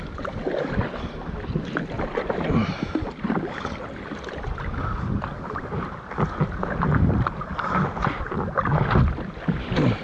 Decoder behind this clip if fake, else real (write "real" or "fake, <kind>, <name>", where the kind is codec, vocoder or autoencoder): real